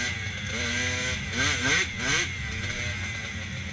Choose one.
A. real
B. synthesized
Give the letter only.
A